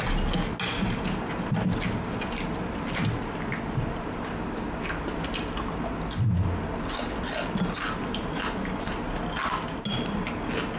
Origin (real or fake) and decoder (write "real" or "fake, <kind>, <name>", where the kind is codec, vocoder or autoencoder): real